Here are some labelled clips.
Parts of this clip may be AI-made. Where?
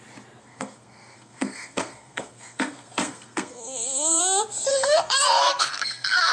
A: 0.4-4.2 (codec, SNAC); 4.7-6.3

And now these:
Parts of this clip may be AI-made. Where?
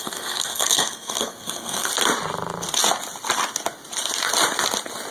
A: 0.0-1.9 (codec, SNAC)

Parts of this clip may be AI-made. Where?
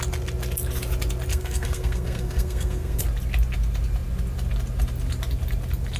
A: 1.3-3.0 (codec, SNAC)